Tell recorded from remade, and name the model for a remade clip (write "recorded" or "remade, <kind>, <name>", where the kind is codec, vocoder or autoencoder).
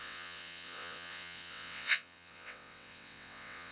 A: remade, vocoder, WaveNeXt